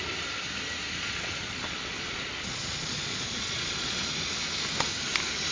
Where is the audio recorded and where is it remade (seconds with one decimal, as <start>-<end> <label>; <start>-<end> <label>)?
0.0-0.8 recorded; 0.8-4.1 remade; 4.1-5.5 recorded